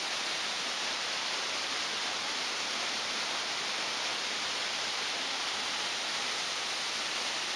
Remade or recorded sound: recorded